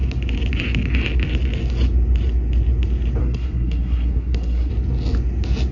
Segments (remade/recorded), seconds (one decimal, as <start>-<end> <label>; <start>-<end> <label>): 0.0-3.2 recorded; 3.2-4.7 remade; 4.7-5.7 recorded